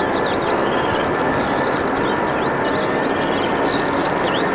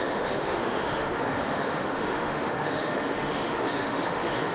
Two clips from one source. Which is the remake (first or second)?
second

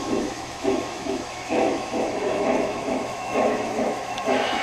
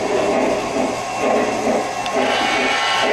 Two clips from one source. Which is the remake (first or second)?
first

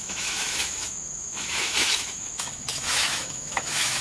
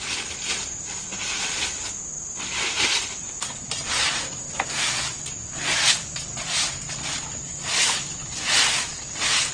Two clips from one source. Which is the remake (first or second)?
first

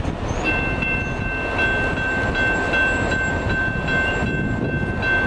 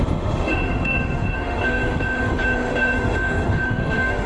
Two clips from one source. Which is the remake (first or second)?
second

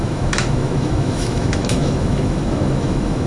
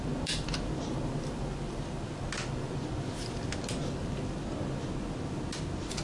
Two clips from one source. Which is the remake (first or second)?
first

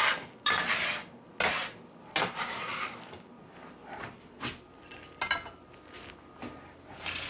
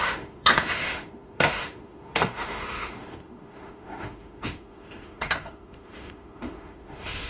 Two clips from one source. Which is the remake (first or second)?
second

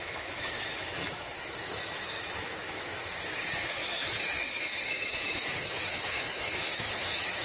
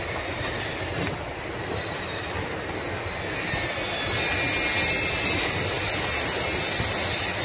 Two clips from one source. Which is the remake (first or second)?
first